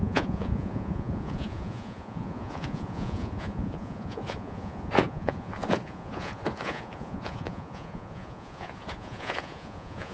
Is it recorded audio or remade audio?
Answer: remade